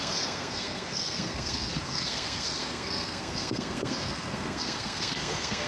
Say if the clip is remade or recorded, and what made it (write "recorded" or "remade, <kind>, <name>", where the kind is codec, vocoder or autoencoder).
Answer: remade, codec, SNAC